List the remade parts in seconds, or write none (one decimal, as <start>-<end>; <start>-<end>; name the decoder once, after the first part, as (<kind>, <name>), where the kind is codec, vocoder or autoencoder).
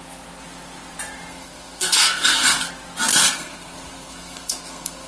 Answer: 1.3-2.7 (codec, SNAC); 3.1-5.1